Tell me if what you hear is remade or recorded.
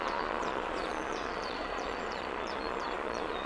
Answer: remade